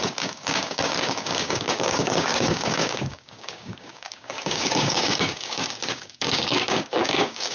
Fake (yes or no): yes